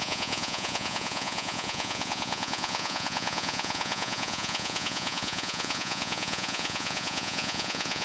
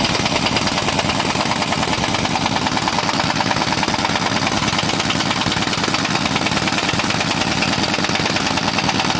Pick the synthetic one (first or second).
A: first